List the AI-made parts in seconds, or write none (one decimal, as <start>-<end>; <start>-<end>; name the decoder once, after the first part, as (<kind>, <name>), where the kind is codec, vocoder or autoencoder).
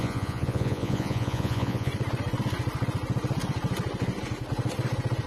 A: 0.0-1.9 (vocoder, Vocos)